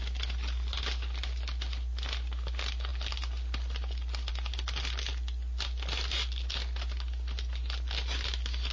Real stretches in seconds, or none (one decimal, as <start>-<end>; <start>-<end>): 0.0-8.7